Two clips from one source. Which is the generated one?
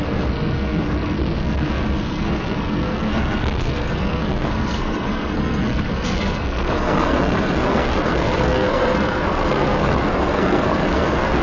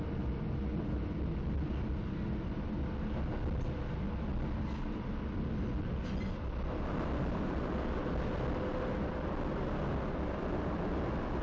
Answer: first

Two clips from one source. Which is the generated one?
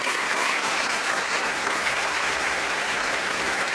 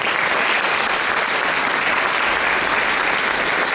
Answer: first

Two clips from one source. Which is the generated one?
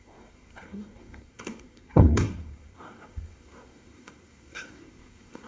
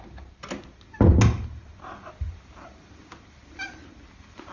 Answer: first